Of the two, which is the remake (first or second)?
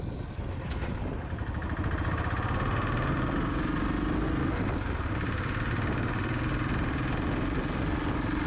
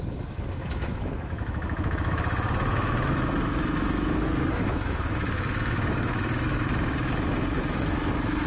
second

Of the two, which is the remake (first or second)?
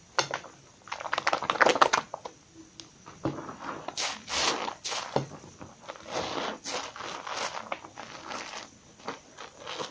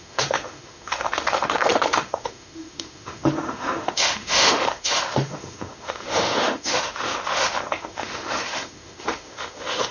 second